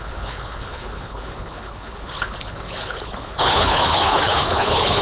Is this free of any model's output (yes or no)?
no